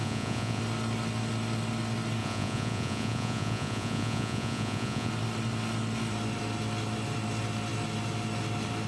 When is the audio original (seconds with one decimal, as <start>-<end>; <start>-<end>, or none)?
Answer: 0.6-2.2; 5.1-8.9

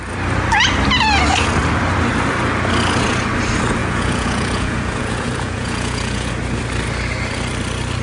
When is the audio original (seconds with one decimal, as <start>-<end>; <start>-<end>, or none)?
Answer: 0.0-3.8; 6.3-8.0

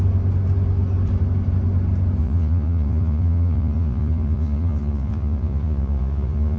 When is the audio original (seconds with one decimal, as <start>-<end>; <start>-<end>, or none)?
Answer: 0.0-2.2

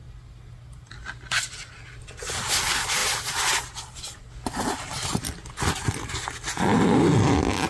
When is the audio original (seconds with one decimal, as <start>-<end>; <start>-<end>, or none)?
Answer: 0.0-7.7

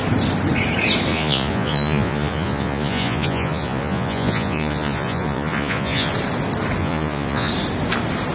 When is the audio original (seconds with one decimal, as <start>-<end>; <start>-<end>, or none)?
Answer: 0.0-1.1; 6.1-6.8; 7.5-8.3